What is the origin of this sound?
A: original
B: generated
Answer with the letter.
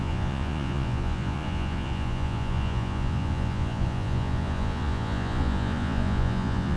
B